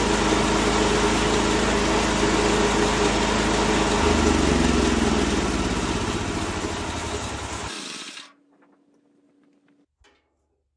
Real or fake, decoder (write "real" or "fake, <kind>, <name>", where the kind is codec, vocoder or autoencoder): real